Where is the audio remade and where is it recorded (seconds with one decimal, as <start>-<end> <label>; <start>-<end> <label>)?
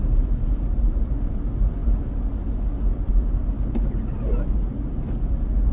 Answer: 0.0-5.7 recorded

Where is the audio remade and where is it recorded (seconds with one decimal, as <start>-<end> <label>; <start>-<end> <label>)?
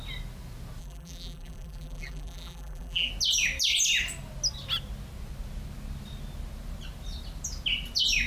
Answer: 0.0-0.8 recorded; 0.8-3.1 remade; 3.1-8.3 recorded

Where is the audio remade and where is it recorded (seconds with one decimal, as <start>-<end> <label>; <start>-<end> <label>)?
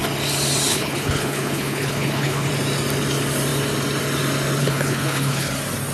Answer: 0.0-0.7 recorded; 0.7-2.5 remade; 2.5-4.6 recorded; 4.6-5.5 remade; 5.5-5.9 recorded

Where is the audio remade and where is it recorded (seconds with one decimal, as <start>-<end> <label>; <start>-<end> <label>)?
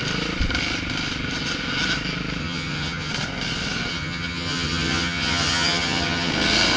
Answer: 0.0-2.4 recorded; 2.4-3.1 remade; 3.1-3.9 recorded; 3.9-6.3 remade; 6.3-6.8 recorded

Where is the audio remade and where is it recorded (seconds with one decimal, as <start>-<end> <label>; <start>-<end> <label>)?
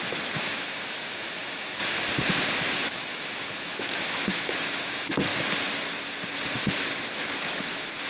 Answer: 0.0-1.8 remade; 1.8-2.9 recorded; 2.9-5.3 remade; 5.3-7.1 recorded; 7.1-8.1 remade